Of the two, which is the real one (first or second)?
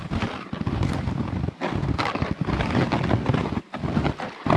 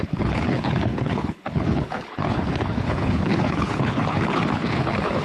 first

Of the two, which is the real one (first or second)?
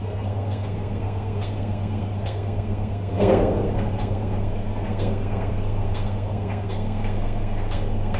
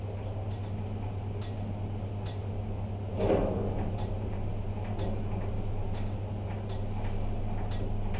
second